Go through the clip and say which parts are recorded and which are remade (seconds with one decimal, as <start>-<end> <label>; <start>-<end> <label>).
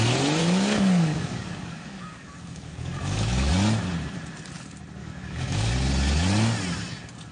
0.0-0.4 recorded; 0.4-3.5 remade; 3.5-5.0 recorded; 5.0-5.7 remade; 5.7-7.3 recorded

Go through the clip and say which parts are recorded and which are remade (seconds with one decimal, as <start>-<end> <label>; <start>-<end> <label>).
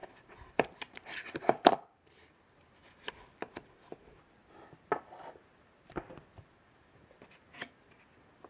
0.0-3.1 remade; 3.1-4.4 recorded; 4.4-5.0 remade; 5.0-8.5 recorded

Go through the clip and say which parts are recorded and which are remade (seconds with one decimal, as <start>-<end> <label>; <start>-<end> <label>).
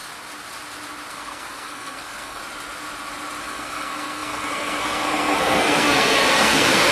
0.0-1.1 recorded; 1.1-2.4 remade; 2.4-3.4 recorded; 3.4-6.9 remade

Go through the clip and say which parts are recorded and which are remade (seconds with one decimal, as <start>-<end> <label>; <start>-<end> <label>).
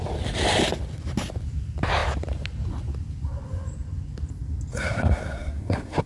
0.0-4.7 recorded; 4.7-6.1 remade